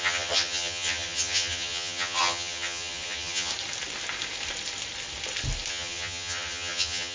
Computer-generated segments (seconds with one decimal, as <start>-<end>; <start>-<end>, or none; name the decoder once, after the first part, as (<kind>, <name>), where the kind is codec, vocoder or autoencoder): 0.0-3.5 (vocoder, HiFi-GAN); 5.7-7.1